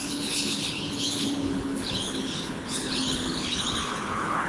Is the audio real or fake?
fake